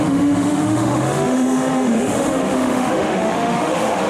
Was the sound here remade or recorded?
remade